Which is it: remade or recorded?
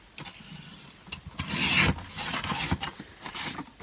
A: recorded